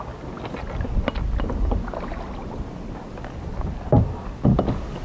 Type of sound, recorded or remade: recorded